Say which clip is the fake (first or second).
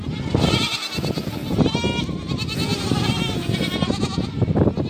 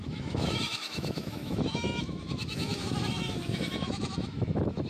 second